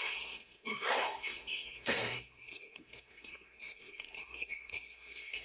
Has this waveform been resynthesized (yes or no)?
yes